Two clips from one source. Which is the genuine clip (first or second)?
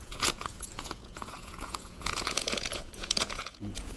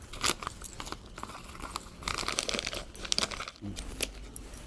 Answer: second